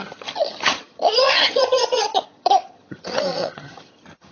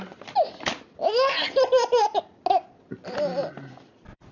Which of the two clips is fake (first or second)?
first